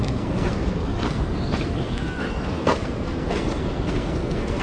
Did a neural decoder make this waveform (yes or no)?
yes